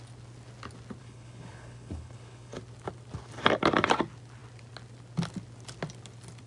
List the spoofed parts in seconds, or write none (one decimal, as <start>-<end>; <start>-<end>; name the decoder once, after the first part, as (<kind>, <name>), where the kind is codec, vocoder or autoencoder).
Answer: 1.0-2.6 (codec, HILCodec)